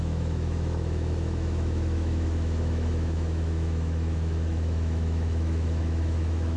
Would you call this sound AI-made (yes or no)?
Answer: yes